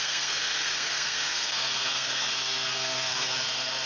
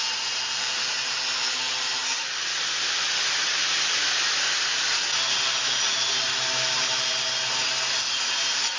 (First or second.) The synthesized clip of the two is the first